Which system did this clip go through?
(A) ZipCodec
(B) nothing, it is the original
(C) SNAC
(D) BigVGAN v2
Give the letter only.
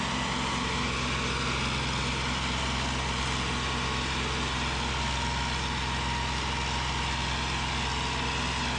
B